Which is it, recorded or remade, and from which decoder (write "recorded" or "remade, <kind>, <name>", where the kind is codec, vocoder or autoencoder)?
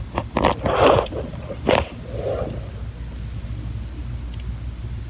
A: recorded